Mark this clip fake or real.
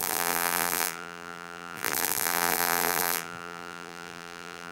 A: fake